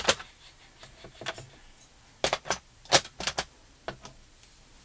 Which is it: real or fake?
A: real